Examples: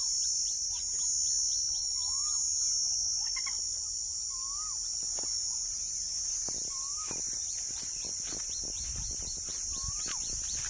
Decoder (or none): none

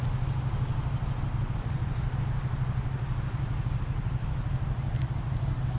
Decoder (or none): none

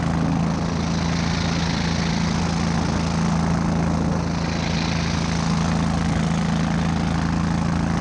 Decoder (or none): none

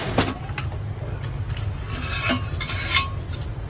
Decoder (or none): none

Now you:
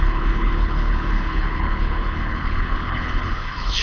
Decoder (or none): codec, HILCodec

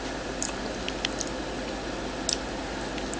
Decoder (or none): none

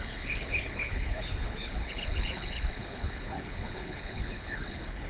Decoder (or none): codec, HILCodec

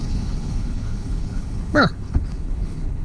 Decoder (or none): codec, HILCodec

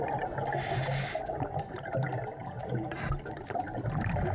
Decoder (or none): none